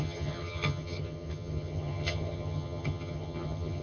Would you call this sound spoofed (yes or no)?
yes